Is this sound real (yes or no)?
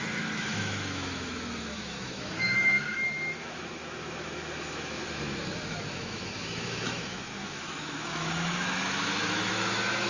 no